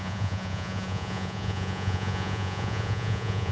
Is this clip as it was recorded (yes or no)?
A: no